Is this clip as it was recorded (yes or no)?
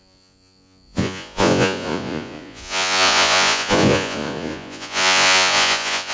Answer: no